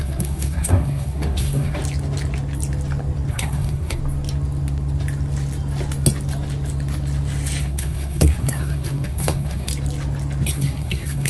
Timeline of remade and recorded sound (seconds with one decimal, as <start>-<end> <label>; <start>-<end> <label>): 0.0-1.8 remade; 1.8-3.3 recorded; 3.3-4.0 remade; 4.0-7.6 recorded; 7.6-9.7 remade; 9.7-10.5 recorded; 10.5-11.3 remade